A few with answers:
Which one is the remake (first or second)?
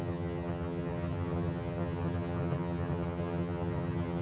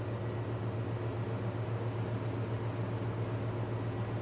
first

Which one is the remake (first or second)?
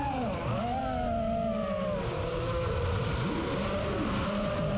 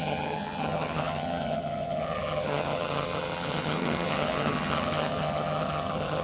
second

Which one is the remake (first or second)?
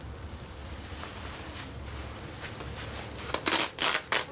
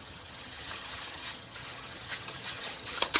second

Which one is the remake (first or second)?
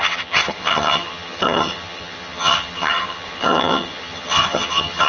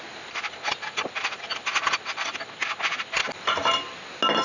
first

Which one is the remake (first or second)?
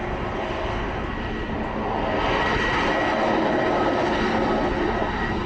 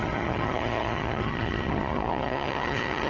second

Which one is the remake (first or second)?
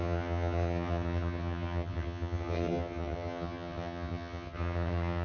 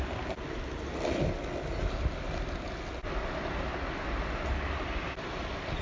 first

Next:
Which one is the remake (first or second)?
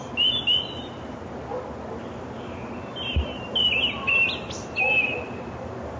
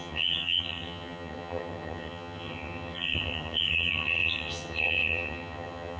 second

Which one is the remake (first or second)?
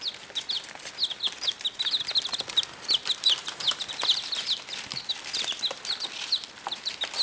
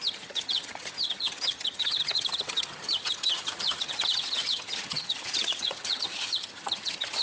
second